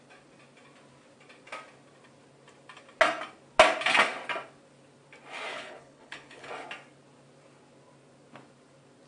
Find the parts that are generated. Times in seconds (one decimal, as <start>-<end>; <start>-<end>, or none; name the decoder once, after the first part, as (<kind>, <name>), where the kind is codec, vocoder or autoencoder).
5.5-6.5 (codec, HILCodec)